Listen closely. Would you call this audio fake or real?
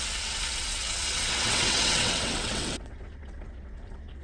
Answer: fake